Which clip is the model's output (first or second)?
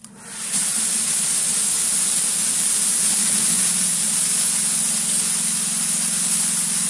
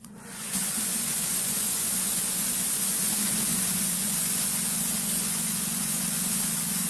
second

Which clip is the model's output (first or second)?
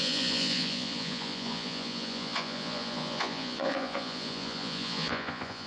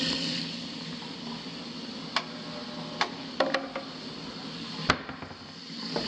first